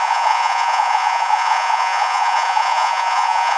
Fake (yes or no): yes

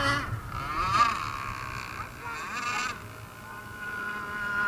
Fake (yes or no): no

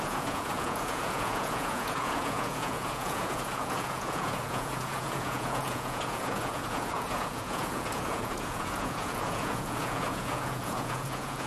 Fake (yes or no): yes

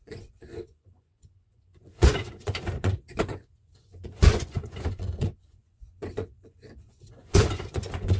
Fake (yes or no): yes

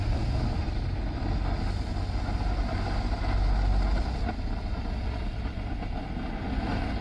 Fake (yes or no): no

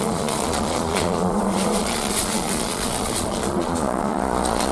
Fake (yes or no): yes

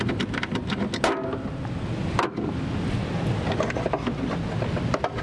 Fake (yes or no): no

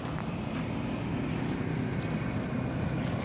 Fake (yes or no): no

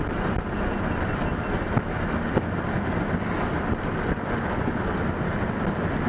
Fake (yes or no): no